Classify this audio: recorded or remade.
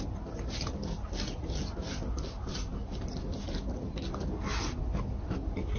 recorded